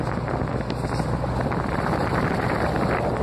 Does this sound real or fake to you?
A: real